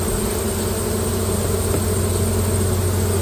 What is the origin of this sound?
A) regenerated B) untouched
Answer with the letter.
B